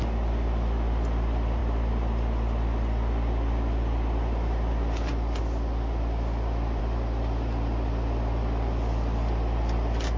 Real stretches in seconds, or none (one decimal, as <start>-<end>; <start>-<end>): 0.0-10.2